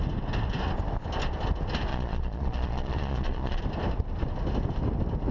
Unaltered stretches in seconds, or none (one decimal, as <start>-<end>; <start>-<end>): 0.0-1.9; 3.6-5.3